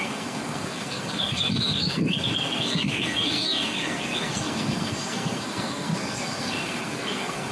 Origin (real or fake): fake